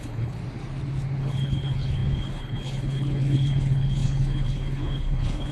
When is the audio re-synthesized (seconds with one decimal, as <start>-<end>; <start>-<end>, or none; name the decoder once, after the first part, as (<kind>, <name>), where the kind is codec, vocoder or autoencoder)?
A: 0.0-0.4 (codec, HILCodec); 1.2-5.5